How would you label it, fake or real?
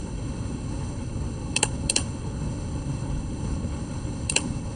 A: fake